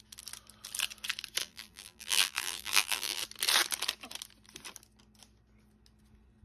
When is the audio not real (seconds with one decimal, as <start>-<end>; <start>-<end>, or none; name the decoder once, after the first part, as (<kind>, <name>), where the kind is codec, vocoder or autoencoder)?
1.4-3.2 (vocoder, BigVGAN v2)